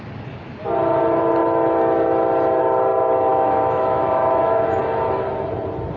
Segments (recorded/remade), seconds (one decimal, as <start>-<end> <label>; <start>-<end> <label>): 0.0-3.3 recorded; 3.3-4.8 remade; 4.8-6.0 recorded